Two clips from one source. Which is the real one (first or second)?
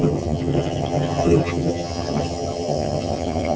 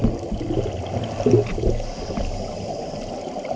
second